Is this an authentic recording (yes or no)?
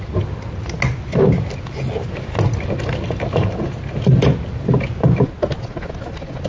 yes